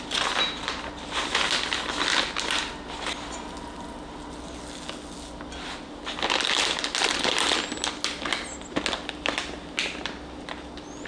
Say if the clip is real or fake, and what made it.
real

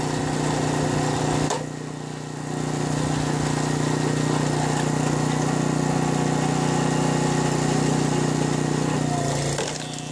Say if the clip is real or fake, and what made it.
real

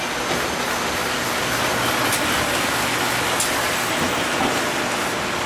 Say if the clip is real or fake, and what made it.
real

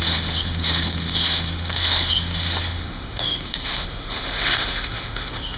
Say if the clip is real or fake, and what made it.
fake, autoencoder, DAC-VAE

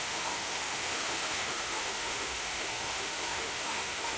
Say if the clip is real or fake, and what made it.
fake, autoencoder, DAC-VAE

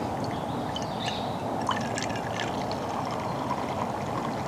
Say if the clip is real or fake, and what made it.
real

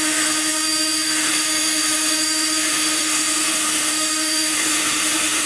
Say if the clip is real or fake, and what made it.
fake, autoencoder, DAC-VAE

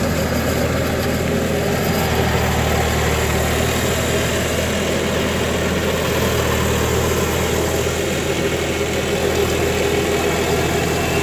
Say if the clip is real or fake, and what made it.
real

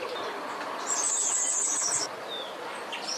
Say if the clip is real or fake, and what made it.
real